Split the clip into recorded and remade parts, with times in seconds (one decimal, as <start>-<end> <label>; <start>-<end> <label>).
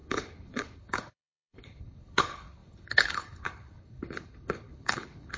0.0-5.4 remade